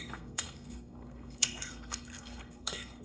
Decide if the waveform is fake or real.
fake